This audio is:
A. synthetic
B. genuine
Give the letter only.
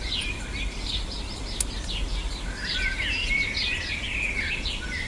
B